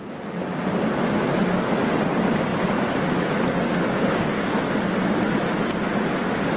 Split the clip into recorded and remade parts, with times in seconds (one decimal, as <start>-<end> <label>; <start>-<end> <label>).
0.0-4.1 recorded; 4.1-4.6 remade; 4.6-6.6 recorded